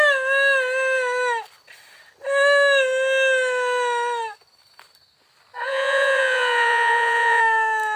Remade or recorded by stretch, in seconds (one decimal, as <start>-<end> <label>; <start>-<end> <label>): 0.0-5.6 recorded; 5.6-7.4 remade; 7.4-8.0 recorded